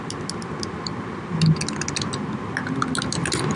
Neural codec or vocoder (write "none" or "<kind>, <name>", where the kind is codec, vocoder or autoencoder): none